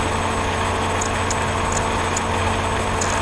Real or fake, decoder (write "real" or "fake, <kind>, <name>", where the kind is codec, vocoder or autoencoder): real